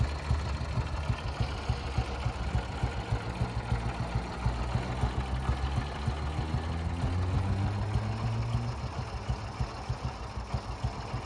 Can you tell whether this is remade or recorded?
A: recorded